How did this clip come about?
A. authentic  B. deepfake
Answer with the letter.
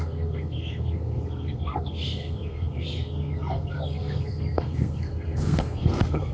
B